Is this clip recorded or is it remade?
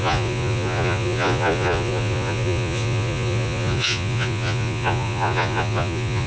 remade